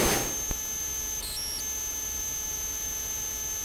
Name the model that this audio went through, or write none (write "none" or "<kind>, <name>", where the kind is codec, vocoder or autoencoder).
none